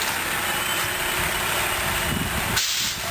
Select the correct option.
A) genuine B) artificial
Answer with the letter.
A